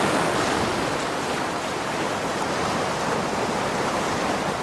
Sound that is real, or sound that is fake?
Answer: real